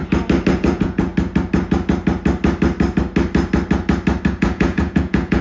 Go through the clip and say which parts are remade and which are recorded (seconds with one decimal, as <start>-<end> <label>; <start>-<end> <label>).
0.0-0.5 recorded; 0.5-1.1 remade; 1.1-4.3 recorded; 4.3-5.4 remade